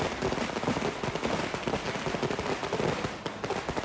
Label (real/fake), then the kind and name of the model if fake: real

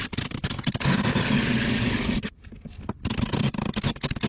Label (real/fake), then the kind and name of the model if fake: real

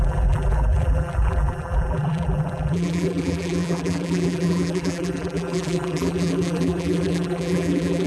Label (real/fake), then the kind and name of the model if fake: fake, vocoder, BigVGAN v2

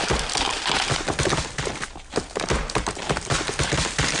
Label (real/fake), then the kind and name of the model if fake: real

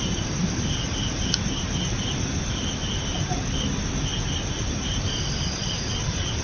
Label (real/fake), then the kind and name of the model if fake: real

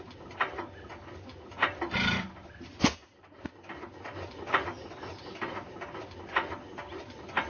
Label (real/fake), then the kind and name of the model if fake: real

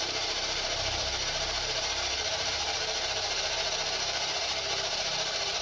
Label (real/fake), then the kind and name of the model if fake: fake, vocoder, BigVGAN v2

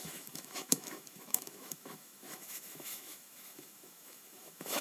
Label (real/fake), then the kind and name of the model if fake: fake, autoencoder, DAC-VAE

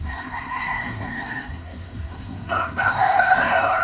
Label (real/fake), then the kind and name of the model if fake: fake, codec, SNAC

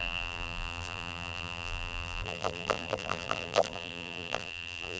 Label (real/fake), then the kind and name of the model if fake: fake, vocoder, BigVGAN v2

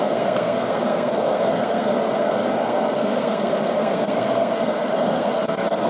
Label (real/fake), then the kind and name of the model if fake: fake, codec, SNAC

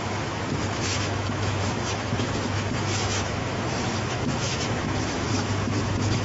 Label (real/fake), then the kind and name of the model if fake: fake, autoencoder, DAC-VAE